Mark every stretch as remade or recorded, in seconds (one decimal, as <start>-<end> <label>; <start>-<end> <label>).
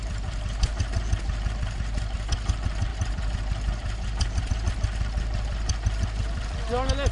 0.0-7.1 recorded